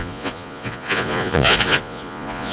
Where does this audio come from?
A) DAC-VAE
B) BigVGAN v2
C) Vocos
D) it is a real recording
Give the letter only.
C